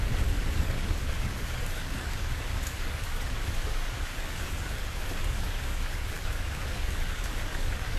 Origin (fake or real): fake